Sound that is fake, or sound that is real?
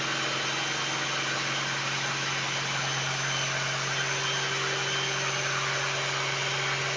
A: real